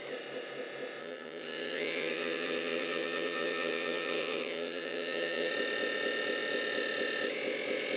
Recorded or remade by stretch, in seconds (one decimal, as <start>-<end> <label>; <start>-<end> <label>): 0.0-1.0 recorded; 1.0-5.5 remade; 5.5-8.0 recorded